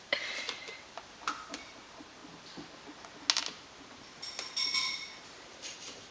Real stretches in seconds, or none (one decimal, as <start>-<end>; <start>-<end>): 2.2-5.2